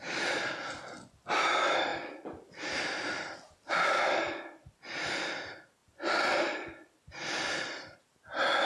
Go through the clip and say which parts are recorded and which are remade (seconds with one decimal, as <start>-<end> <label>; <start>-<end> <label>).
0.0-8.7 recorded